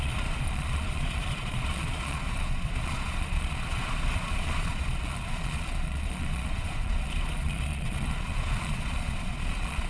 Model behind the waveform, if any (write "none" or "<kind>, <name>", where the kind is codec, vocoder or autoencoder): vocoder, Vocos